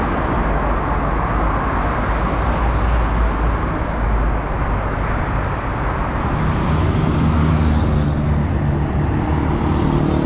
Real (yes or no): yes